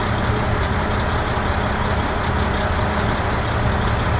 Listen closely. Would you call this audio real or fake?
real